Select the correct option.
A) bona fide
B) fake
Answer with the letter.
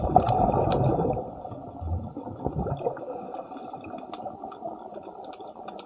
A